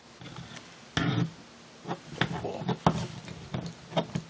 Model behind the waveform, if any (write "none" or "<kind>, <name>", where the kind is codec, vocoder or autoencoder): none